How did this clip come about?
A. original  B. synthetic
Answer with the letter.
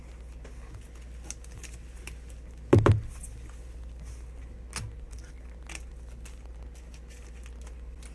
A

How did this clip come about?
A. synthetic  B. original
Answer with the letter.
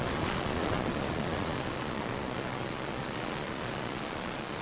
A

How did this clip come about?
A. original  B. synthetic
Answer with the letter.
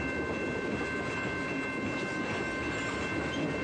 A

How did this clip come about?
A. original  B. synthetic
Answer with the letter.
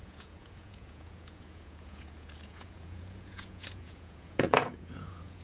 B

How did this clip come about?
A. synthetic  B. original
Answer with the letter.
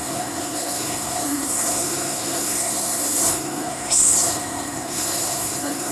A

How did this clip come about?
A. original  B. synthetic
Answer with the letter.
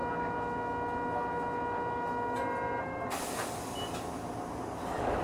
A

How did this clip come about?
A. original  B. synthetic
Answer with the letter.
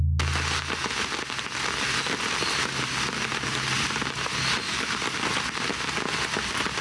A